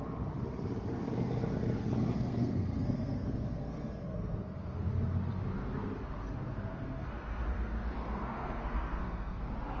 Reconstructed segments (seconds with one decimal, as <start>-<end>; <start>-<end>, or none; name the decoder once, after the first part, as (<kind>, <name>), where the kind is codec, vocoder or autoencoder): 2.1-4.9 (codec, SNAC); 6.7-9.4